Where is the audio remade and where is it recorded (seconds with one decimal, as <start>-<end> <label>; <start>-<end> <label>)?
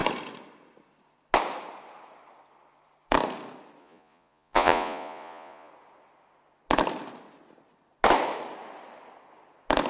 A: 0.0-3.8 recorded; 3.8-5.7 remade; 5.7-9.9 recorded